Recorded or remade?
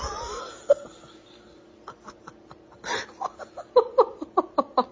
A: recorded